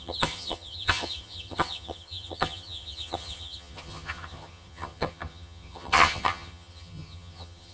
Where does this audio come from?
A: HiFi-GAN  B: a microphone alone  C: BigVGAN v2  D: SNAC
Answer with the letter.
A